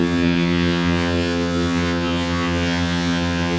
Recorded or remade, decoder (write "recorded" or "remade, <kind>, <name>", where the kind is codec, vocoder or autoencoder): remade, vocoder, HiFi-GAN